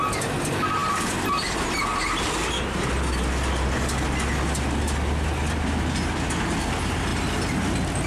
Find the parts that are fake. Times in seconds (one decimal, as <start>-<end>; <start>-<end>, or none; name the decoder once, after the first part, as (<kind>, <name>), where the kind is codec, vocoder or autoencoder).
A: none